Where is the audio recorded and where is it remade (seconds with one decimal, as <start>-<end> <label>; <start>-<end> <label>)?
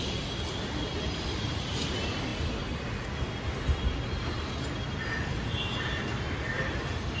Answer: 0.0-2.3 remade; 2.3-6.3 recorded; 6.3-7.2 remade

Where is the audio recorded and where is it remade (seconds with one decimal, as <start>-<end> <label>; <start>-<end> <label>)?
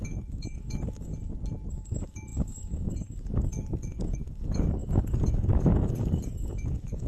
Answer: 0.0-1.1 remade; 1.1-1.7 recorded; 1.7-7.1 remade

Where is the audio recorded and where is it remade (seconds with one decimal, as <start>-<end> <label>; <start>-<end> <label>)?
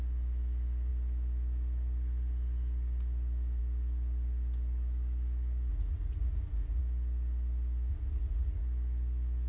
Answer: 0.0-5.7 recorded; 5.7-6.8 remade; 6.8-7.9 recorded; 7.9-8.6 remade; 8.6-9.5 recorded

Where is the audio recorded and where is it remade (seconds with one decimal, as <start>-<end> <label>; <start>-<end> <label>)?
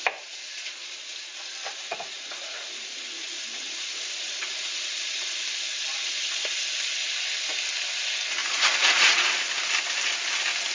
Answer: 0.0-1.7 recorded; 1.7-5.2 remade; 5.2-8.4 recorded; 8.4-9.3 remade; 9.3-10.7 recorded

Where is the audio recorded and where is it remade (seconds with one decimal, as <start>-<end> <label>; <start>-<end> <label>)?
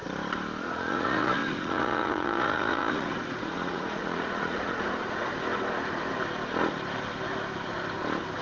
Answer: 0.0-0.6 recorded; 0.6-5.3 remade; 5.3-8.4 recorded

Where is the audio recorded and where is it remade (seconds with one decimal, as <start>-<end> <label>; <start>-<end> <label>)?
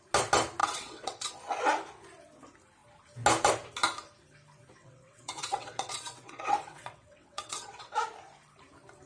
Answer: 0.0-0.6 recorded; 0.6-1.3 remade; 1.3-4.8 recorded; 4.8-8.0 remade; 8.0-9.1 recorded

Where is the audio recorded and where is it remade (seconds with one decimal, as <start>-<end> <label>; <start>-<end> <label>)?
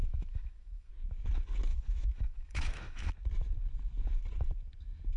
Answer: 0.0-0.9 remade; 0.9-1.7 recorded; 1.7-3.1 remade; 3.1-5.2 recorded